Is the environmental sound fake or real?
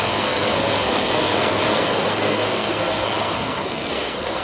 fake